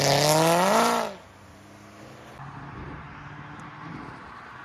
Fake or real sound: real